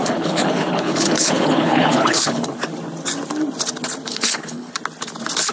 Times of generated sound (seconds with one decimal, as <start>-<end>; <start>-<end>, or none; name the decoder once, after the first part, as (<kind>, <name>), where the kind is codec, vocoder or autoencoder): 0.0-2.6 (codec, HILCodec); 4.1-4.7